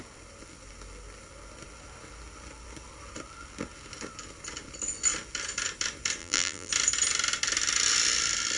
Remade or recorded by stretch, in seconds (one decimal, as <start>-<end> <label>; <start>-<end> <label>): 0.0-6.2 recorded; 6.2-6.7 remade; 6.7-8.6 recorded